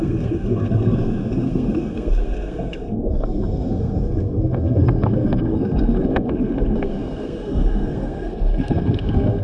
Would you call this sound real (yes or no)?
no